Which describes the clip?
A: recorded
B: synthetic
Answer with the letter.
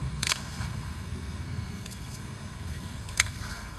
B